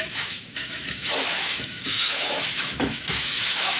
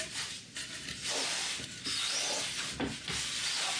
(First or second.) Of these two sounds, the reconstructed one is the first